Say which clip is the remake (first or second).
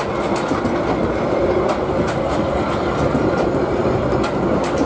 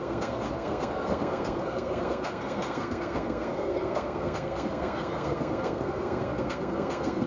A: second